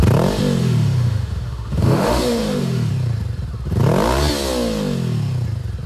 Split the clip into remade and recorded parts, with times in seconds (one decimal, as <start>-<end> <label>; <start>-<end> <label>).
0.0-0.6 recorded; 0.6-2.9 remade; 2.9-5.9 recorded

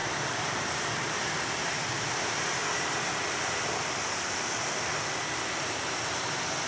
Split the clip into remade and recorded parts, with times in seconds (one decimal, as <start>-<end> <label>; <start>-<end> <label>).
0.0-1.9 remade; 1.9-6.7 recorded

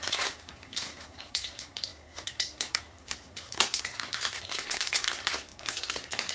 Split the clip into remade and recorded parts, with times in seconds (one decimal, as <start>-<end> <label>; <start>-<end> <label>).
0.0-6.3 remade

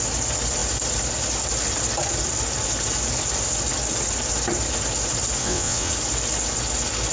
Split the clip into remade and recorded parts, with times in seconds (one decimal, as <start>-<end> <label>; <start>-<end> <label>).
0.0-5.4 recorded; 5.4-5.9 remade; 5.9-7.1 recorded

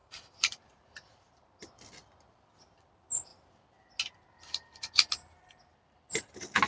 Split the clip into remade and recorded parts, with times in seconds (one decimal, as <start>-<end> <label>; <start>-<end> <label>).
0.0-1.7 remade; 1.7-6.7 recorded